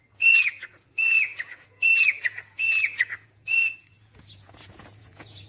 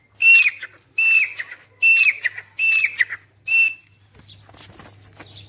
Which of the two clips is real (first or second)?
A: second